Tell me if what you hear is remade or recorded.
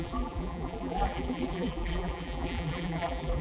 remade